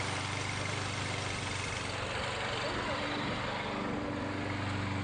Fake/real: real